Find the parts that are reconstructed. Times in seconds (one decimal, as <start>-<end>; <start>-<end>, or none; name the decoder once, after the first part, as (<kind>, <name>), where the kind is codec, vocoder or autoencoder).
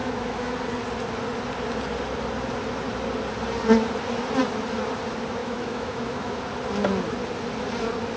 0.0-0.5 (autoencoder, DAC-VAE); 5.4-6.4